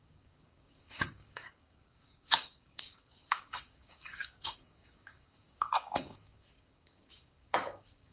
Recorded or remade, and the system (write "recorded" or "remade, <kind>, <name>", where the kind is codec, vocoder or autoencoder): remade, codec, DAC